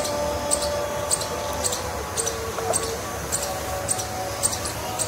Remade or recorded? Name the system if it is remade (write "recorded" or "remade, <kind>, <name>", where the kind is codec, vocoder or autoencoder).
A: recorded